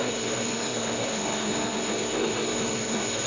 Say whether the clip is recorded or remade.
remade